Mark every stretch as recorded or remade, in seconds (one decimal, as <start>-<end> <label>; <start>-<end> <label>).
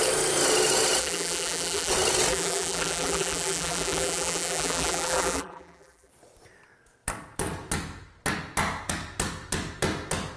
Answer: 0.0-1.0 recorded; 1.0-1.9 remade; 1.9-2.3 recorded; 2.3-6.1 remade; 6.1-10.4 recorded